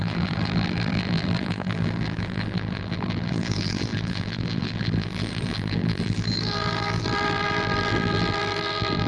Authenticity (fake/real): fake